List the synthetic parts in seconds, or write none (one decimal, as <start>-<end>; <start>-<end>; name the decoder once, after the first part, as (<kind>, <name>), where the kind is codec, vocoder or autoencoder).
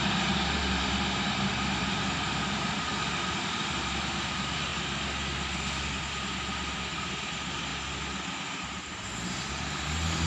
0.0-2.9 (vocoder, BigVGAN v2); 3.4-4.7; 6.0-7.7; 8.5-10.3